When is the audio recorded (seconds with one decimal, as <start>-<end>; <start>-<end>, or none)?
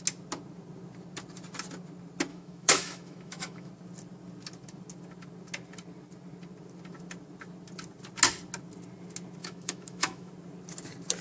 0.0-2.3; 3.7-9.4; 10.3-11.2